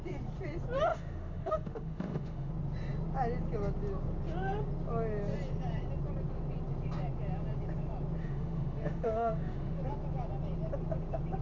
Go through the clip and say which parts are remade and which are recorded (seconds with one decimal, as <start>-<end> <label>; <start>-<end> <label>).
0.0-0.9 recorded; 0.9-2.5 remade; 2.5-8.2 recorded; 8.2-9.8 remade; 9.8-11.4 recorded